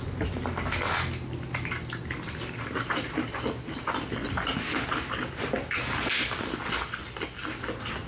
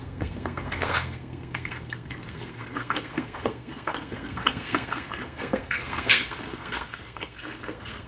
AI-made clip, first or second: second